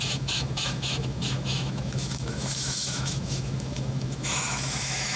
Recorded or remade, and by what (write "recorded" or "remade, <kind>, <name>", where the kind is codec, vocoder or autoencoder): remade, autoencoder, DAC-VAE